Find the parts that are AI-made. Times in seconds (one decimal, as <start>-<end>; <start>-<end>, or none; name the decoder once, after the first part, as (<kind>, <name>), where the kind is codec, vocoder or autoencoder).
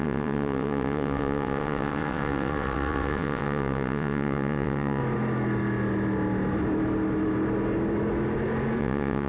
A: 0.0-5.0 (vocoder, WaveNeXt); 8.8-9.3